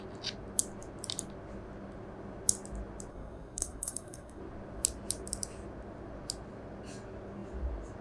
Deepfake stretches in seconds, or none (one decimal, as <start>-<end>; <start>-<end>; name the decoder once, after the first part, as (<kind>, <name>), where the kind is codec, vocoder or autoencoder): 3.1-4.4 (codec, SNAC)